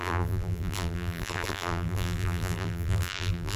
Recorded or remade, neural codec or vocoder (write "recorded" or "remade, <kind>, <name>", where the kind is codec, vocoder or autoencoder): remade, vocoder, BigVGAN v2